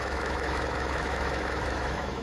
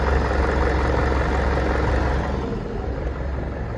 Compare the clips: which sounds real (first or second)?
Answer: second